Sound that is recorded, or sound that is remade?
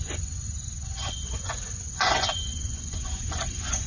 remade